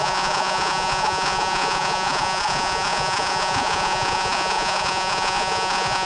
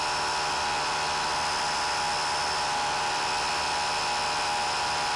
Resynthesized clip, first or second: first